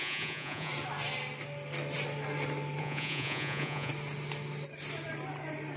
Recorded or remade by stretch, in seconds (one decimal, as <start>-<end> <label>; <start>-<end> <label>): 0.0-0.7 remade; 0.7-2.8 recorded; 2.8-3.9 remade; 3.9-5.8 recorded